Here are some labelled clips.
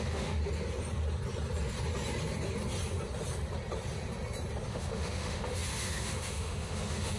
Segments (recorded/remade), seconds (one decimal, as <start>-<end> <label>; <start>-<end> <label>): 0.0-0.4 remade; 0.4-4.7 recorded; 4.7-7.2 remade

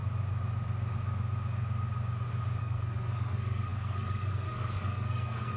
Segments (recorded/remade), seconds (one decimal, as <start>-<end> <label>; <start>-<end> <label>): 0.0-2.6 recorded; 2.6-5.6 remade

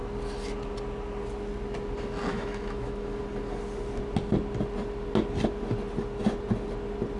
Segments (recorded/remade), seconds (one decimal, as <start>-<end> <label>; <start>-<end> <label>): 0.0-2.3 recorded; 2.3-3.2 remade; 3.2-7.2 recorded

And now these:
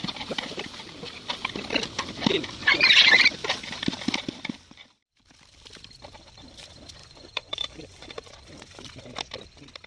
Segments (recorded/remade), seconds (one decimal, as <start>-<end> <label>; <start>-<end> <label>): 0.0-2.6 recorded; 2.6-3.2 remade; 3.2-7.0 recorded; 7.0-8.3 remade; 8.3-9.9 recorded